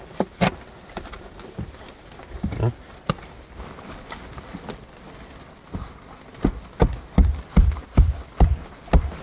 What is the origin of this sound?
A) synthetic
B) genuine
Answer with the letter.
B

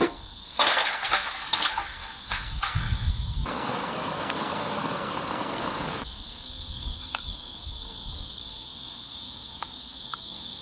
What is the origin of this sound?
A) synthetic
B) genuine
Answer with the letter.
A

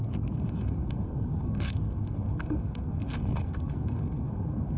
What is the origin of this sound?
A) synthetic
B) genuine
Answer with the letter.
A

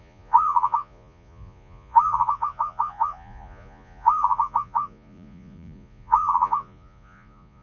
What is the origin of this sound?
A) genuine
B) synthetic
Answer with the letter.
B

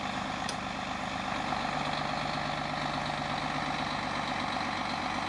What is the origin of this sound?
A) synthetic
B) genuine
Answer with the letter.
B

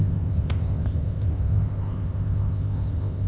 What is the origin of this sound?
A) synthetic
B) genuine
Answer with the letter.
A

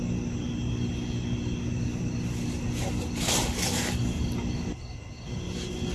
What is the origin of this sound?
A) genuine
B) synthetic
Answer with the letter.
A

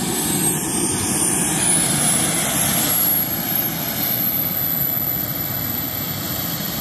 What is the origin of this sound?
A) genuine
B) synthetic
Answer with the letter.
B